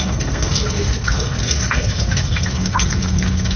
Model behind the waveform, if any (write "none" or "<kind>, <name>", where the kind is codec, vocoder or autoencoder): codec, SNAC